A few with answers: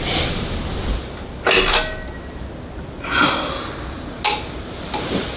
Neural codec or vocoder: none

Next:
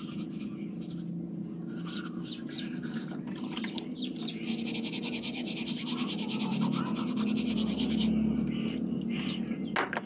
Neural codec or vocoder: none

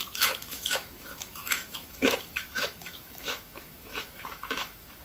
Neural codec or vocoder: autoencoder, DAC-VAE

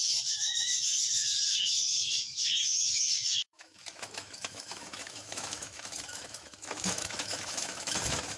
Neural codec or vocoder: autoencoder, DAC-VAE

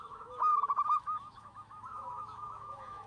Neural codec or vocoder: autoencoder, DAC-VAE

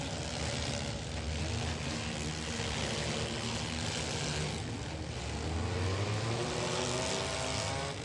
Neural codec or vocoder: none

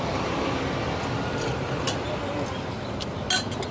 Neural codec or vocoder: none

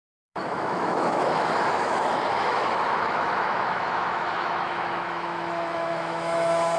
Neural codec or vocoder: autoencoder, DAC-VAE